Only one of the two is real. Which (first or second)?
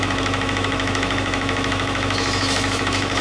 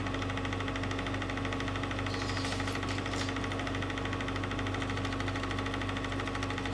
second